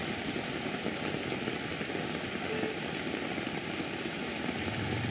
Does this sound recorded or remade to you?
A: recorded